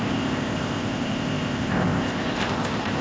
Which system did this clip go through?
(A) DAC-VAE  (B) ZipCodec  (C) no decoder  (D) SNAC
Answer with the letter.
B